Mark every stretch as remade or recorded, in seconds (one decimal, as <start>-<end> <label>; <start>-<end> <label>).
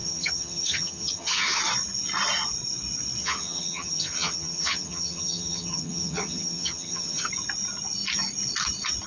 0.0-1.6 remade; 1.6-3.2 recorded; 3.2-7.3 remade; 7.3-9.1 recorded